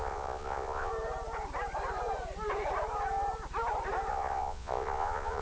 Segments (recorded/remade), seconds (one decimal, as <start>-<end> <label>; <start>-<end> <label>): 0.0-0.9 remade; 0.9-4.1 recorded; 4.1-5.4 remade